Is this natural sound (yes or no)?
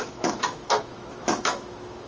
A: no